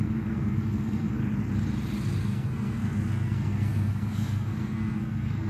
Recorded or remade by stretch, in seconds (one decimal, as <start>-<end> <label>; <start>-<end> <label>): 0.0-1.2 remade; 1.2-2.2 recorded; 2.2-5.5 remade